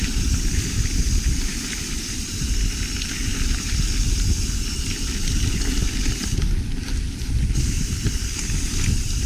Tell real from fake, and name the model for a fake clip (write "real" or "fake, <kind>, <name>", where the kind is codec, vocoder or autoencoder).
real